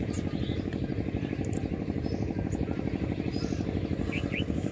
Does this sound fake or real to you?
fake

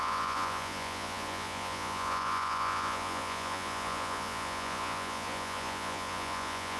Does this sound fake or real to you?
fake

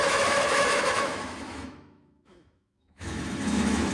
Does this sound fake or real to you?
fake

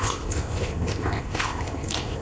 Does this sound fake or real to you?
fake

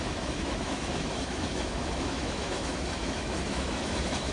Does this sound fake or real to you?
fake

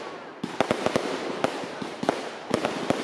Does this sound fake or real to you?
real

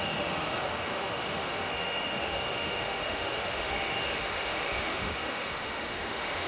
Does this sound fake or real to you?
fake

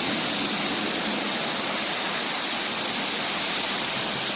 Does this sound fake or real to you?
real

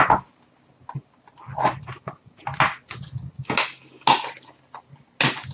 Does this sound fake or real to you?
real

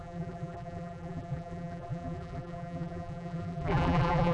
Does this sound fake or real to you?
fake